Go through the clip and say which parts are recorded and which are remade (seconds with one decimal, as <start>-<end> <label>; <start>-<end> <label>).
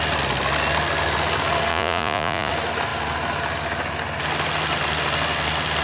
0.0-1.7 recorded; 1.7-2.5 remade; 2.5-5.8 recorded